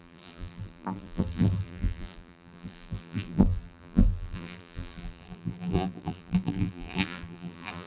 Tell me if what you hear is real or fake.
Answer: fake